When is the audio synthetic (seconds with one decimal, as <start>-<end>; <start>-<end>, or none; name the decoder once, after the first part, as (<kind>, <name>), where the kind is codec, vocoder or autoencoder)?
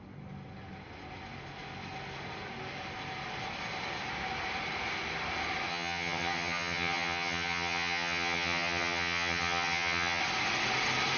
5.7-10.2 (vocoder, HiFi-GAN)